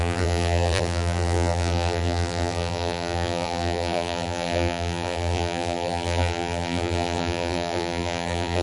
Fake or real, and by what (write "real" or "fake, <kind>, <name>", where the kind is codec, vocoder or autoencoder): fake, vocoder, BigVGAN v2